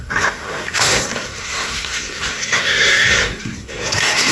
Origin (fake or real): fake